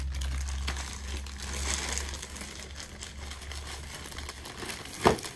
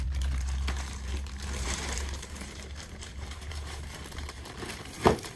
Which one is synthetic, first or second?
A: second